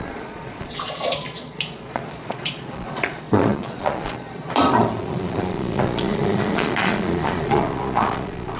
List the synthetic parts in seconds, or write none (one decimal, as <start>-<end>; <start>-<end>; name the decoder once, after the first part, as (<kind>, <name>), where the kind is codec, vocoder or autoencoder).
0.0-8.6 (vocoder, Vocos)

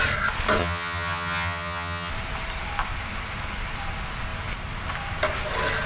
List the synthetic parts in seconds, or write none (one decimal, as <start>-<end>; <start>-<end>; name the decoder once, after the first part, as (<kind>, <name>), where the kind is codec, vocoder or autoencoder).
0.6-2.1 (vocoder, HiFi-GAN)

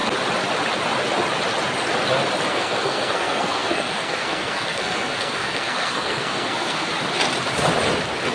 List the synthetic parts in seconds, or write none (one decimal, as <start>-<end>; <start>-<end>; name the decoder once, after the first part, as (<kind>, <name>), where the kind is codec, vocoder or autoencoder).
2.5-6.9 (codec, SNAC)

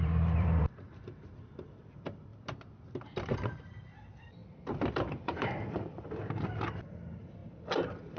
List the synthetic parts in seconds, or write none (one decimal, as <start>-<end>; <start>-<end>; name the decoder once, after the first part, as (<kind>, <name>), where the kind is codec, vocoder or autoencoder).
0.0-2.3 (vocoder, BigVGAN v2); 3.6-8.2

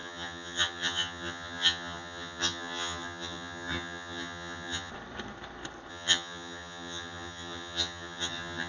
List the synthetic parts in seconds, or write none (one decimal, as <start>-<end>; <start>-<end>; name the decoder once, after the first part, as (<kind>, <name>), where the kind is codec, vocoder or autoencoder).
0.0-4.9 (vocoder, HiFi-GAN); 5.9-8.7

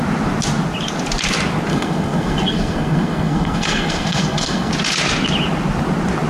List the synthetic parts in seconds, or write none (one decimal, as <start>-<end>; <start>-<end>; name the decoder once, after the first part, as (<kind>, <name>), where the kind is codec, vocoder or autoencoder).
1.7-4.7 (codec, SNAC)